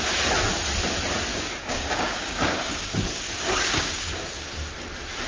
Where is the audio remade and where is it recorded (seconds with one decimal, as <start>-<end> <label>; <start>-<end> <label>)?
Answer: 0.0-1.3 recorded; 1.3-4.5 remade; 4.5-5.3 recorded